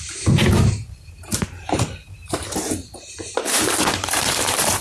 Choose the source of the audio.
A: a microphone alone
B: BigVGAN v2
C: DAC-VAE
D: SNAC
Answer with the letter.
B